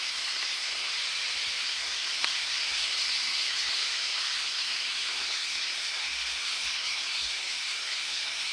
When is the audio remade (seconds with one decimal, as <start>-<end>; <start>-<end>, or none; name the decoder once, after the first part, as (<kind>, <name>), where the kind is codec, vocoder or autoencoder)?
0.0-0.9 (codec, SNAC); 1.6-8.5

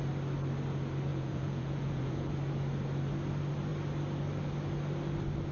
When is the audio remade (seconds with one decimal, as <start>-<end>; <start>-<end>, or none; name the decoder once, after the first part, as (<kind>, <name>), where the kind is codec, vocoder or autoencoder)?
1.1-2.3 (vocoder, Vocos)

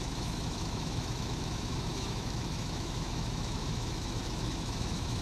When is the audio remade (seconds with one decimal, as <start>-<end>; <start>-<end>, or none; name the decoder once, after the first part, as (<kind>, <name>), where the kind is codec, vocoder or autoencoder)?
0.0-5.2 (autoencoder, DAC-VAE)

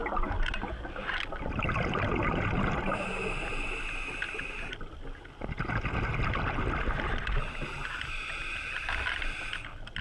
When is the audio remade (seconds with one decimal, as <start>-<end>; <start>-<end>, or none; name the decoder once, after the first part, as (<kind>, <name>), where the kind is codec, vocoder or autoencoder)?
none

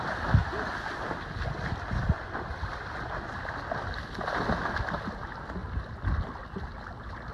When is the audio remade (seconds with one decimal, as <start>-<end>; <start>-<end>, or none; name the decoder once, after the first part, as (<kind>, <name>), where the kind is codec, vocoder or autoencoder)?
none

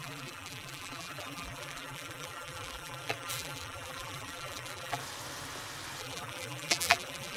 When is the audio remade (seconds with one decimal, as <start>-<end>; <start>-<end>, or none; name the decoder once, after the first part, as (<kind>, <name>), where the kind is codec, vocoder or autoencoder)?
0.0-5.0 (vocoder, BigVGAN v2); 6.0-7.4